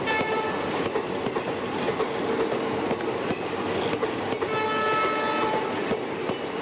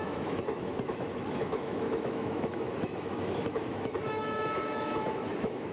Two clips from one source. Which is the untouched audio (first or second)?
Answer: first